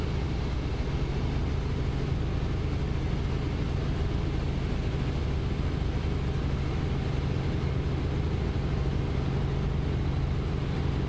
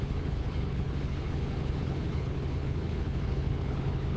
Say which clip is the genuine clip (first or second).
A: first